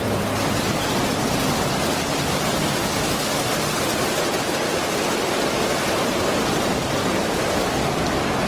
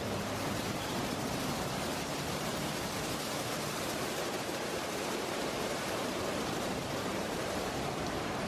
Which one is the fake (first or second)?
second